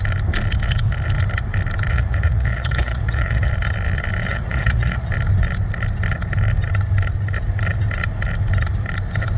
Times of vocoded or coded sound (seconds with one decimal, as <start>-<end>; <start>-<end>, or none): 1.9-3.5; 4.3-5.1